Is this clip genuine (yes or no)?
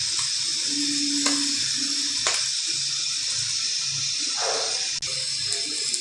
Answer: yes